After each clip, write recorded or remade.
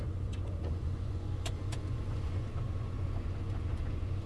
remade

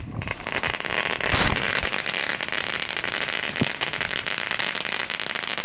recorded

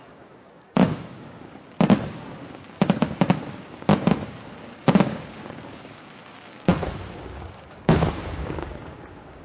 remade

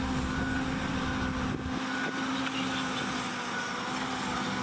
recorded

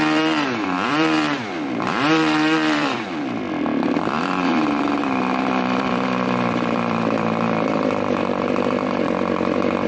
remade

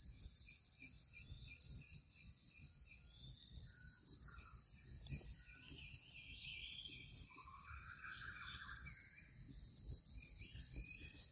remade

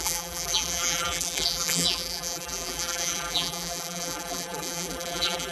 remade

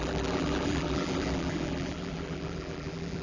remade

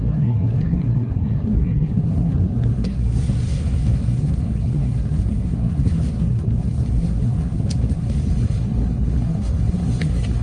remade